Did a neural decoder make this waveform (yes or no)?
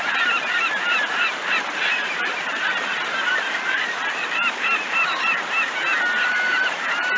yes